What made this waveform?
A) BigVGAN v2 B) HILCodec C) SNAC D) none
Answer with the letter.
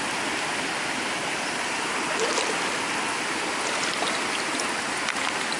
D